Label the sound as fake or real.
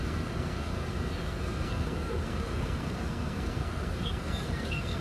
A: fake